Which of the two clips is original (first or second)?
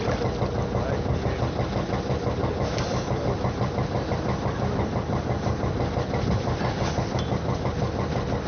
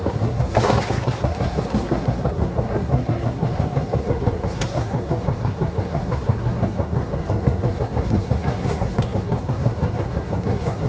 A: first